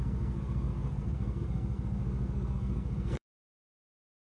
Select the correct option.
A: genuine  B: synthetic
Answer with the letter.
B